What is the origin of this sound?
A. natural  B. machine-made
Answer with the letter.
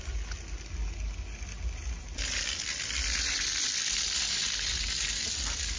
A